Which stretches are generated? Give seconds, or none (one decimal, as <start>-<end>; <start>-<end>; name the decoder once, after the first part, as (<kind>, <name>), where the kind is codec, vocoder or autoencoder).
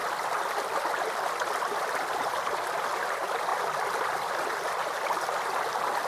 0.0-2.8 (vocoder, BigVGAN v2); 3.5-5.2